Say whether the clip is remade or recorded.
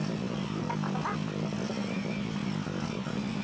recorded